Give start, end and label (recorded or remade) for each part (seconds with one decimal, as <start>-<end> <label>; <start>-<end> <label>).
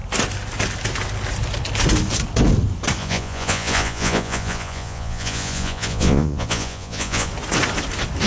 0.0-3.0 recorded; 3.0-7.3 remade; 7.3-8.3 recorded